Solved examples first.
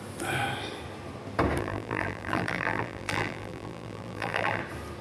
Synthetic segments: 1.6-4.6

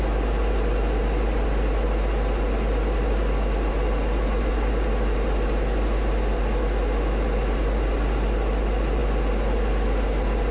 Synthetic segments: none